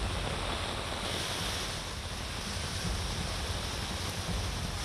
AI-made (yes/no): no